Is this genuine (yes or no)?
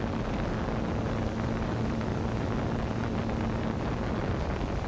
yes